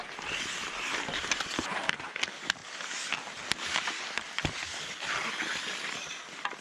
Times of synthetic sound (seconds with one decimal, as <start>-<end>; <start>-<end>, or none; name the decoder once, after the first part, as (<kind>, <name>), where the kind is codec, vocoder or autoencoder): 0.0-2.6 (vocoder, BigVGAN v2); 5.0-6.6

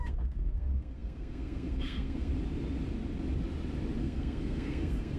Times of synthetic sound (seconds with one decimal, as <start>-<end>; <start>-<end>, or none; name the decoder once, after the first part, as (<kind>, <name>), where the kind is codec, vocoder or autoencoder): 0.0-2.3 (codec, SNAC); 4.0-5.2

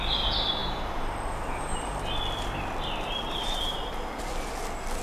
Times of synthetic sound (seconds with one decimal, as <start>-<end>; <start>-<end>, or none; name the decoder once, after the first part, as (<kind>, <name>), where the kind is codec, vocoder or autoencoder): none

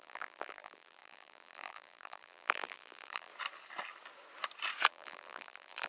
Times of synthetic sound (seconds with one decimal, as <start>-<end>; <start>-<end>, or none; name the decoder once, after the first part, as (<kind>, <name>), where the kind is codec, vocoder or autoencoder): 0.0-3.3 (vocoder, BigVGAN v2); 4.9-5.9

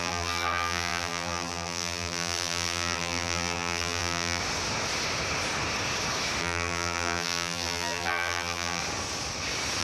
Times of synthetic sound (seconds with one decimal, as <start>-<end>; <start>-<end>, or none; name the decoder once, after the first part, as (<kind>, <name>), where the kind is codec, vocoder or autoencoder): 0.0-4.4 (vocoder, BigVGAN v2); 6.4-8.8

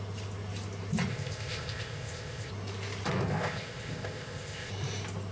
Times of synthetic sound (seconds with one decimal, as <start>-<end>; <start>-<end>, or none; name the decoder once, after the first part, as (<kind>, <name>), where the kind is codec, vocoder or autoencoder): 1.1-2.5 (codec, ZipCodec); 3.3-4.7

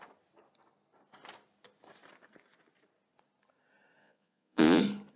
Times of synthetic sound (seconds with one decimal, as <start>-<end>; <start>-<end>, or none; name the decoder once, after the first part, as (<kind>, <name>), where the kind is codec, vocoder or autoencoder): 4.0-4.8 (vocoder, Vocos)